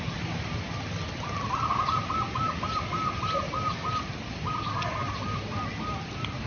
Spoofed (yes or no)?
no